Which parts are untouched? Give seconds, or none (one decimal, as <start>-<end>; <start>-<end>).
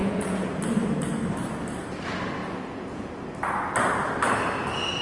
0.5-2.4; 3.1-5.0